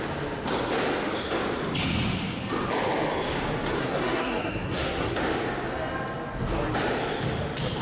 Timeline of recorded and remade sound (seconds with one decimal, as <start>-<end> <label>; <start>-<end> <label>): 0.0-3.8 recorded; 3.8-5.2 remade; 5.2-7.8 recorded